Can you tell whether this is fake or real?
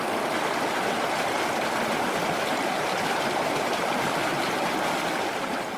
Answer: real